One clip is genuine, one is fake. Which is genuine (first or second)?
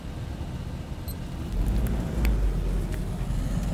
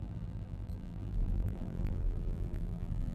first